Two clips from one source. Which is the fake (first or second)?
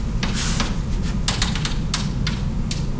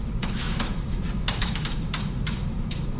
second